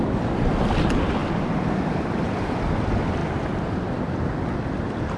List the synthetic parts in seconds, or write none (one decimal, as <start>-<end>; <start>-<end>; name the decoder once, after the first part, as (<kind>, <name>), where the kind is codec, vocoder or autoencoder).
1.2-2.7 (vocoder, BigVGAN v2)